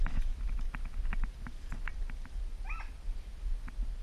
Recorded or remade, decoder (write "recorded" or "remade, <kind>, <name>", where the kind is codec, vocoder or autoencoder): recorded